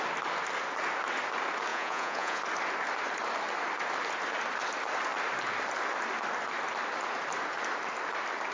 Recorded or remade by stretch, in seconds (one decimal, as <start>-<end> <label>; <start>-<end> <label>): 0.0-1.7 recorded; 1.7-2.4 remade; 2.4-8.5 recorded